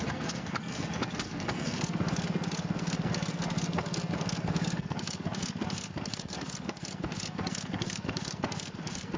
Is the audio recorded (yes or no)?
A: no